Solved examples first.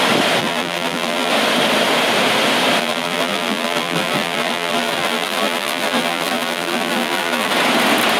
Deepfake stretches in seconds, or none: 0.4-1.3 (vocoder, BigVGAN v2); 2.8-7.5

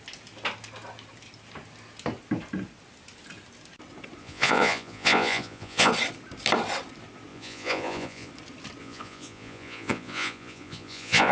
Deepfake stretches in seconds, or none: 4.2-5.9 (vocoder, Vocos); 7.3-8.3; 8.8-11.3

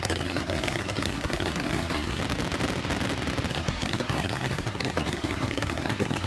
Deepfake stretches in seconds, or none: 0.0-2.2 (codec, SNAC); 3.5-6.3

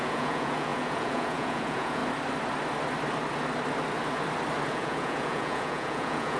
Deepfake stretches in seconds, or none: 0.0-2.0 (vocoder, Vocos); 4.7-6.4